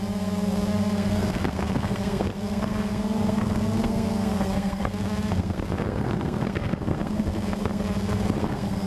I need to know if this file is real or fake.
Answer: fake